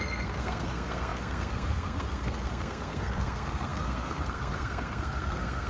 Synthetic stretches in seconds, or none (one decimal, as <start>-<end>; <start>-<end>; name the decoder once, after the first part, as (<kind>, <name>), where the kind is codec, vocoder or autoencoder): 0.0-5.7 (codec, SNAC)